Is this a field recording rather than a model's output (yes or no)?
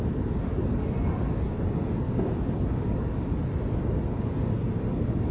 yes